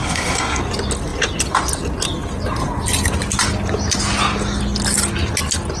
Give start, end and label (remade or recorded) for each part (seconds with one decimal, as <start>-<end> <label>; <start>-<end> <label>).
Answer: 0.0-0.6 remade; 0.6-5.8 recorded